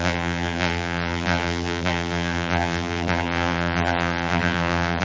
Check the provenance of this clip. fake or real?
fake